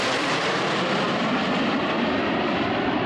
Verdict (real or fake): fake